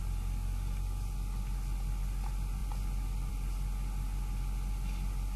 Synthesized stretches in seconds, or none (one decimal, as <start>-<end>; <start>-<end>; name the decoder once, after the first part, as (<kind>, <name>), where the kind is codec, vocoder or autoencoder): none